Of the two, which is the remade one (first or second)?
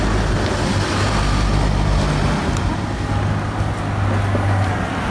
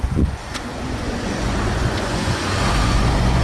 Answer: second